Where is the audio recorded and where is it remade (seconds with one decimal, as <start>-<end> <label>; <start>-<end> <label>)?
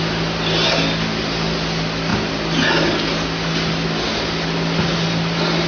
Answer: 0.0-5.7 recorded